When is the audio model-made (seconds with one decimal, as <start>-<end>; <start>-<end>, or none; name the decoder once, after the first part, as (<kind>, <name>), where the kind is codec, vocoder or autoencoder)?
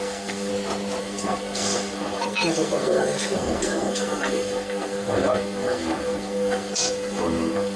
0.0-0.5 (codec, SNAC); 1.0-7.8